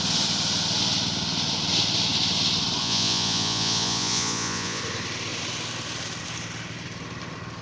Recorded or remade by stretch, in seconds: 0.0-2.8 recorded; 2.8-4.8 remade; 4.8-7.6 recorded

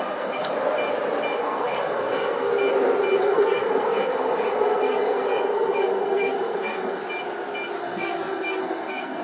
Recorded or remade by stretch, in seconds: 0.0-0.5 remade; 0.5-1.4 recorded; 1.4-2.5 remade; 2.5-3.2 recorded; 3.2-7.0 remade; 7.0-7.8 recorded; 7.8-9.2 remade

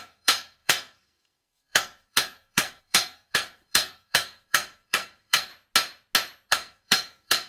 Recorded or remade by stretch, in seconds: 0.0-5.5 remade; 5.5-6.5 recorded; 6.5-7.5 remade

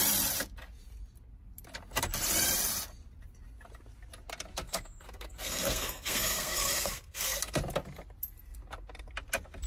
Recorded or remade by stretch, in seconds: 0.0-4.5 recorded; 4.5-7.6 remade; 7.6-9.7 recorded